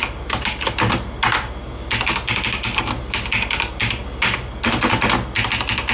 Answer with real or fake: real